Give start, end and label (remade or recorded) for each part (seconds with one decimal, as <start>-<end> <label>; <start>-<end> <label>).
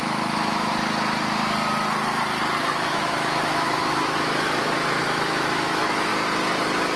0.0-0.7 remade; 0.7-2.6 recorded; 2.6-6.1 remade; 6.1-7.0 recorded